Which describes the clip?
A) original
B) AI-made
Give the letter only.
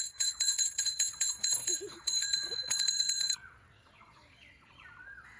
B